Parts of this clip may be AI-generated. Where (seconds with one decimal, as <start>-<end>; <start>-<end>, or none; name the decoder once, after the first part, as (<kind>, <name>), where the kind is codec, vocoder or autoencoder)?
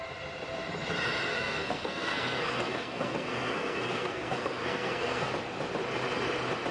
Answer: 1.3-5.3 (codec, SNAC)